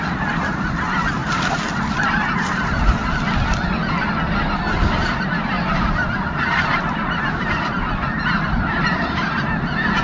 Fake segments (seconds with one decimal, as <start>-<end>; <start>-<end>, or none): none